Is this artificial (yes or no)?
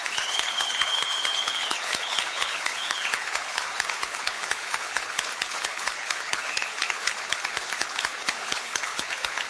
yes